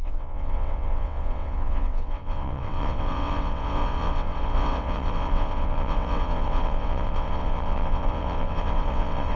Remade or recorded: remade